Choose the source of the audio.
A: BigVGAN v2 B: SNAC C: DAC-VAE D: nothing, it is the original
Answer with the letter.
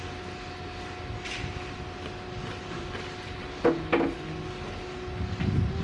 D